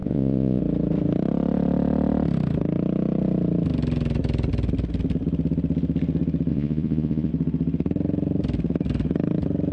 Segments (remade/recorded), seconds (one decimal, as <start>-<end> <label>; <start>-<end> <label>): 0.0-0.6 remade; 0.6-6.5 recorded; 6.5-7.3 remade; 7.3-9.7 recorded